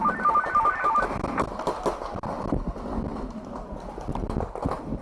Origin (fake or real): real